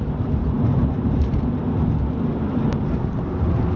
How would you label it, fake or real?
real